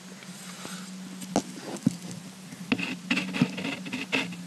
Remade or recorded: recorded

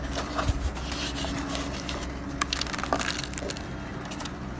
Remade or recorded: recorded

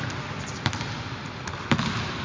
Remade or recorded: remade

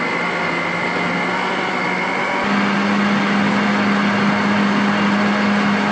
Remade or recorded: recorded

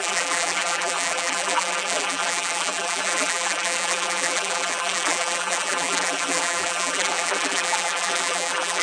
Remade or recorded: remade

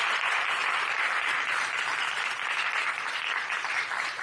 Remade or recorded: remade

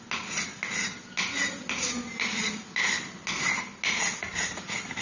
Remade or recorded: recorded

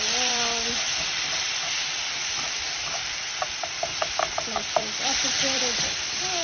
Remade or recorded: remade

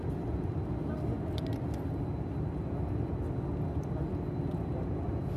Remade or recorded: recorded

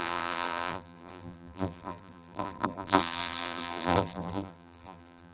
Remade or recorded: remade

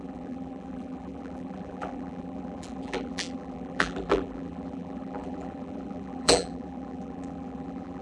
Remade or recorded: remade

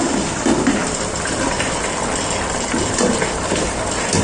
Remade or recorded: remade